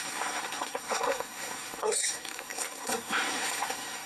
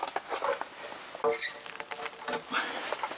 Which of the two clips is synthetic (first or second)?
first